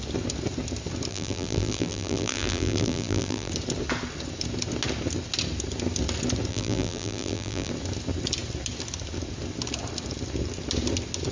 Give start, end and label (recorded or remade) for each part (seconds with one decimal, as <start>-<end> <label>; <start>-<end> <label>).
0.0-1.1 recorded; 1.1-3.5 remade; 3.5-6.5 recorded; 6.5-7.7 remade; 7.7-11.3 recorded